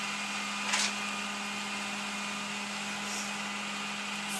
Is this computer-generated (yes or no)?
no